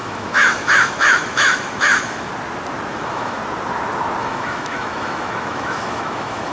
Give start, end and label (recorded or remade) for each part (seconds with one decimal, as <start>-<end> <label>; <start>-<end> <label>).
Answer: 0.0-2.3 remade; 2.3-2.9 recorded; 2.9-3.4 remade; 3.4-4.2 recorded; 4.2-6.5 remade